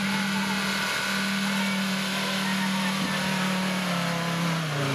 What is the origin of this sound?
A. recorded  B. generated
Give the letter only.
A